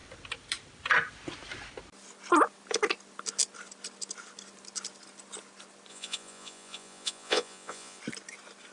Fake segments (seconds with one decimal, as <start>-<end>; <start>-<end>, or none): 5.9-8.0